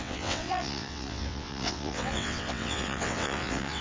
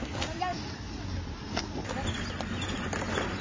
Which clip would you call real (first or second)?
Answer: second